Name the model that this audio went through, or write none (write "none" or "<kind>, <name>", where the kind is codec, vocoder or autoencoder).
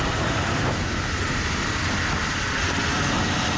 vocoder, BigVGAN v2